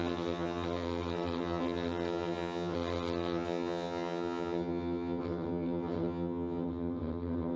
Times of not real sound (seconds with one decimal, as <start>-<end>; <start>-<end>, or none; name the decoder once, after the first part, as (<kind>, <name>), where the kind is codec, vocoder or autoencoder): 0.0-7.6 (vocoder, HiFi-GAN)